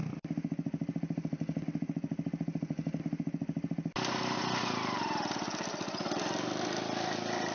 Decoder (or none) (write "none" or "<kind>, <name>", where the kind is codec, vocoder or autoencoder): none